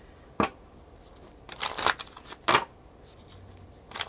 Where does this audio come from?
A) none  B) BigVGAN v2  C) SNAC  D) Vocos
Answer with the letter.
A